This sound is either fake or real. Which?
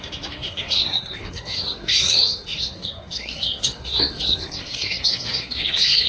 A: fake